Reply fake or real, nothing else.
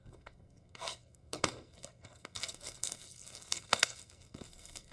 fake